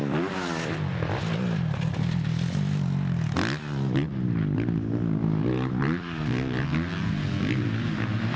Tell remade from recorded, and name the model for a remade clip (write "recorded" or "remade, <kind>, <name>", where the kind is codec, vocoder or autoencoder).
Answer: recorded